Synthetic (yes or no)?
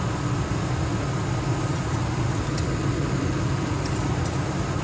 no